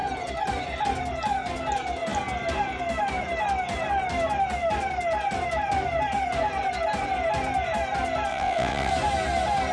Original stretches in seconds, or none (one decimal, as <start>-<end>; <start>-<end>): 0.0-8.3; 8.9-9.7